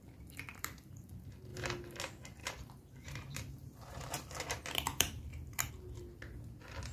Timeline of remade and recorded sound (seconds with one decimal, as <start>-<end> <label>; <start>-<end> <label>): 0.0-0.5 recorded; 0.5-1.1 remade; 1.1-2.4 recorded; 2.4-5.7 remade; 5.7-6.9 recorded